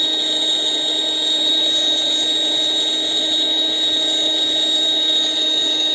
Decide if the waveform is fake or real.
real